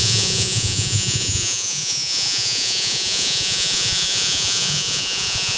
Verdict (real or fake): fake